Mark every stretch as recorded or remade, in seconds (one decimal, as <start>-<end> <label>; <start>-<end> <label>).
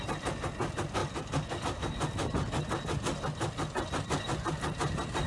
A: 0.0-5.3 recorded